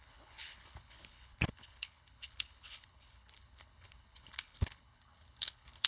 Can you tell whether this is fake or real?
fake